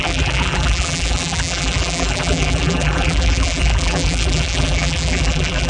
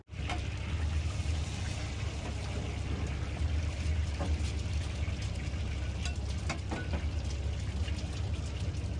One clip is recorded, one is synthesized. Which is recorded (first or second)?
second